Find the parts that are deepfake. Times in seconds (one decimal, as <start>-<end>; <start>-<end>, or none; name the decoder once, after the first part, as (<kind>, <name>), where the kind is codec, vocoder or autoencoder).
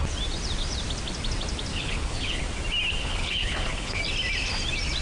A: 1.7-2.4 (codec, HILCodec); 3.0-4.0